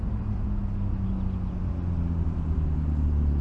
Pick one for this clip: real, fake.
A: real